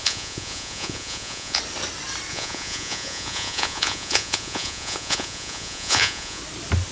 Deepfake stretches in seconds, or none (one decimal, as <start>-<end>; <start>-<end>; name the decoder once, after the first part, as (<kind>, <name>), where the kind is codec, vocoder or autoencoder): 0.0-1.6 (vocoder, Vocos); 2.3-6.4